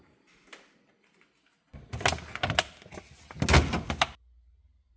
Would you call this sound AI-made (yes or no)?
no